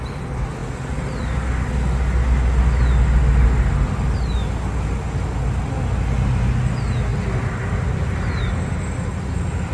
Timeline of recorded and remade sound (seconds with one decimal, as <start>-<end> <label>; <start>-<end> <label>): 0.0-9.7 recorded

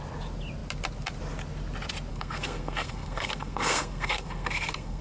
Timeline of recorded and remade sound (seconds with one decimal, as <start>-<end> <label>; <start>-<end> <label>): 0.0-2.1 recorded; 2.1-5.0 remade

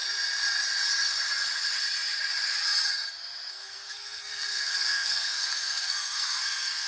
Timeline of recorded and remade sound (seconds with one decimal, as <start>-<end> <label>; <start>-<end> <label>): 0.0-3.5 recorded; 3.5-6.9 remade

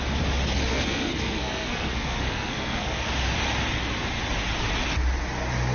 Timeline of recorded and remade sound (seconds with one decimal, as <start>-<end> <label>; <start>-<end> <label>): 0.0-0.7 recorded; 0.7-3.1 remade; 3.1-5.7 recorded

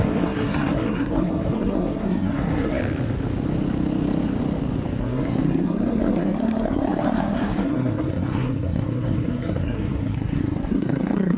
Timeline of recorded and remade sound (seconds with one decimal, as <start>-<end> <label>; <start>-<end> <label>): 0.0-2.8 remade; 2.8-5.0 recorded; 5.0-11.4 remade